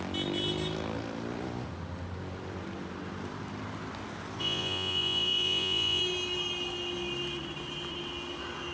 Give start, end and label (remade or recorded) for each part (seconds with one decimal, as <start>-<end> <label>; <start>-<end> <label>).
0.0-4.4 recorded; 4.4-6.0 remade; 6.0-8.7 recorded